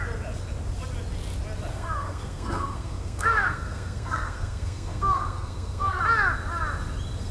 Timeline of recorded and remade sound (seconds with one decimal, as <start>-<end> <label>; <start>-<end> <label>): 0.0-1.7 recorded; 1.7-6.0 remade; 6.0-7.3 recorded